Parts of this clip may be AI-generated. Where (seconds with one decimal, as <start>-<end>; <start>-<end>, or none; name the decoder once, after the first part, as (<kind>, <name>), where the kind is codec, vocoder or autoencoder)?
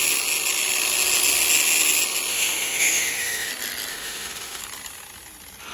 2.3-3.5 (autoencoder, DAC-VAE); 3.9-4.6